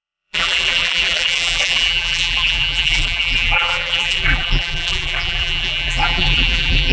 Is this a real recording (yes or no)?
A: no